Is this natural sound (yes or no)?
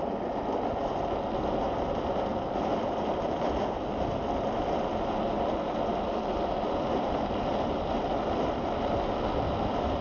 yes